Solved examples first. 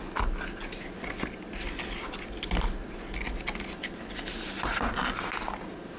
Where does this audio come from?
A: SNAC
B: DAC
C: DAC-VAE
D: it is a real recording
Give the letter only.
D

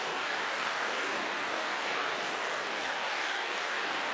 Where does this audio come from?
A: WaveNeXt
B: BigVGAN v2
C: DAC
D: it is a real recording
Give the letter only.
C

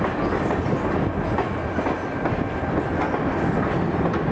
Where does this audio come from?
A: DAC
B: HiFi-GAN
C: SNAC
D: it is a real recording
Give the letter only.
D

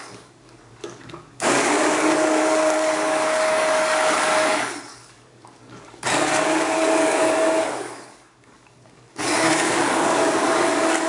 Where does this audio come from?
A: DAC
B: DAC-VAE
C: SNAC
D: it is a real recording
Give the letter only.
A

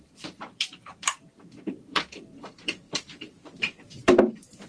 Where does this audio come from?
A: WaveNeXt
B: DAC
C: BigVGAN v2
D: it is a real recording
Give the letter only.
C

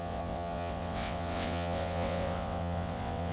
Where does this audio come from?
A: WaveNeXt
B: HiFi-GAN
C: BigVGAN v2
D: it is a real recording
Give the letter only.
A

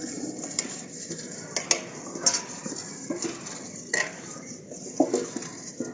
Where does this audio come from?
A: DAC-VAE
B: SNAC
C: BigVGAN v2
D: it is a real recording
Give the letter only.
D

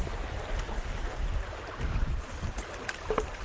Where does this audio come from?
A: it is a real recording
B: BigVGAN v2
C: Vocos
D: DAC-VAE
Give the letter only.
A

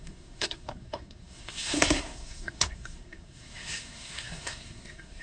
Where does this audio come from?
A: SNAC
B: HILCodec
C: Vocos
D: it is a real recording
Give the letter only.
A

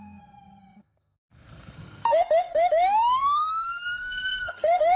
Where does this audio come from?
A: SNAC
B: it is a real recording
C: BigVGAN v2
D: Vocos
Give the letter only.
A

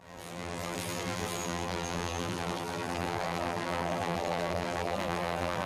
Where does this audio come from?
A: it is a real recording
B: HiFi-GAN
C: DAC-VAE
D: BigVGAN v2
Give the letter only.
D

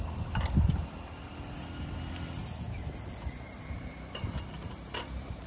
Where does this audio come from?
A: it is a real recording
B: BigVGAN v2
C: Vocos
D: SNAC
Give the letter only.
A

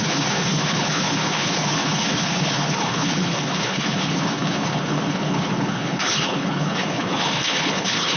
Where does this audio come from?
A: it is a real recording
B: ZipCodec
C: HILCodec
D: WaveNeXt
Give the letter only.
C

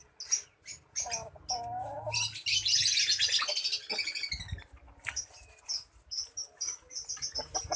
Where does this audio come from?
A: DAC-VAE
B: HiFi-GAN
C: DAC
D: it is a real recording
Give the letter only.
D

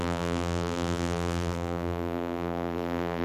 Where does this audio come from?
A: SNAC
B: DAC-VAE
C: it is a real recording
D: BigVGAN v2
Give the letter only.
D